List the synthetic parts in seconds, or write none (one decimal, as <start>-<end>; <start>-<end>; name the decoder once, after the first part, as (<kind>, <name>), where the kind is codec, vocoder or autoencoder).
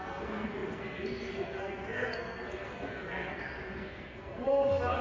0.0-5.0 (codec, SNAC)